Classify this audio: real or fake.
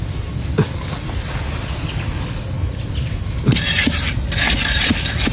real